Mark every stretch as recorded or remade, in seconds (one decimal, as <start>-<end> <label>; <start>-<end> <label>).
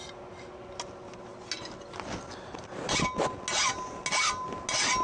0.0-5.0 recorded